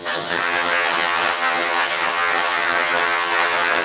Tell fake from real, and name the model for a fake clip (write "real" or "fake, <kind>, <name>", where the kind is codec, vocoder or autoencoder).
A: fake, vocoder, HiFi-GAN